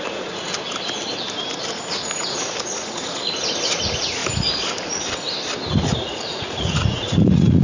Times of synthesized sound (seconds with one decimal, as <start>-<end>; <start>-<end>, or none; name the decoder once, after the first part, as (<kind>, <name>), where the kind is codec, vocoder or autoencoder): 0.0-0.5 (vocoder, Vocos); 2.2-4.2; 5.8-7.6